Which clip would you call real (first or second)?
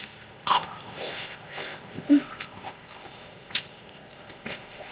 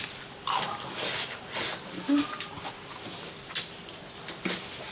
second